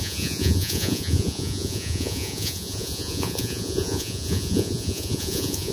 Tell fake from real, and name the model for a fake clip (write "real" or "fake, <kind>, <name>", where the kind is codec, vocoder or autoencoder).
fake, vocoder, Vocos